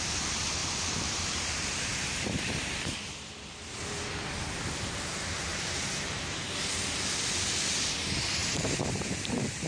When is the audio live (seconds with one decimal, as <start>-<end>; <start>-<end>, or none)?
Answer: 0.0-0.6; 3.3-5.5; 6.5-8.4